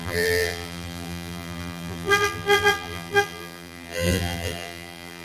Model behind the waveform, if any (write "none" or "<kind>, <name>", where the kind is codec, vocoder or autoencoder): vocoder, BigVGAN v2